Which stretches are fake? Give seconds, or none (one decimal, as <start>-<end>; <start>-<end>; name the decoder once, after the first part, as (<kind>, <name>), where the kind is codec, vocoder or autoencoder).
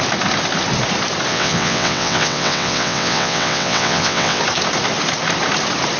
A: 1.3-4.4 (vocoder, WaveNeXt)